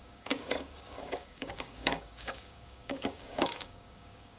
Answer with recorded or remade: remade